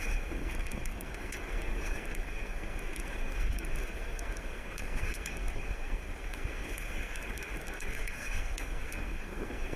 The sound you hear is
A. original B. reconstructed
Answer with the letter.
B